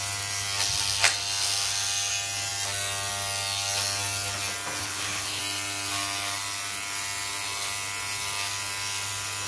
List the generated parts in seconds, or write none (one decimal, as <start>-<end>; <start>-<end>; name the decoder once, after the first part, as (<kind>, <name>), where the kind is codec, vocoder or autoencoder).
4.8-5.4 (codec, HILCodec)

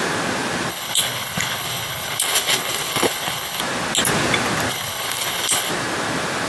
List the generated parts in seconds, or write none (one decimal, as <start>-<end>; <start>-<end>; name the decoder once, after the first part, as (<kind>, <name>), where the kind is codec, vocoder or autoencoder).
0.7-3.6 (codec, HILCodec); 4.7-5.7

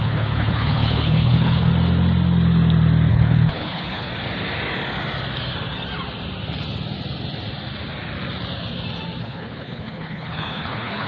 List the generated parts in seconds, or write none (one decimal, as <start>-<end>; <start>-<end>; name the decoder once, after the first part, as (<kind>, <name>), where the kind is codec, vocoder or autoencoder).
0.0-1.7 (codec, HILCodec); 3.1-4.1; 9.2-11.1

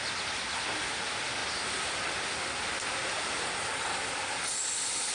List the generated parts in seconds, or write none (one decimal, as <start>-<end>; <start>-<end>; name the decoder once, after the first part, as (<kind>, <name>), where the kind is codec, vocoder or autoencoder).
none

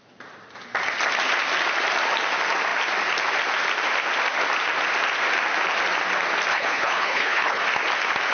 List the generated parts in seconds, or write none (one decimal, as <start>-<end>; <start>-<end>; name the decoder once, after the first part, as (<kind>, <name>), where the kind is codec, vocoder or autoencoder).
6.5-7.6 (codec, HILCodec)